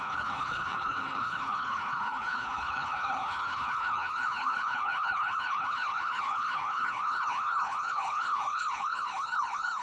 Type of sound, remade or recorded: remade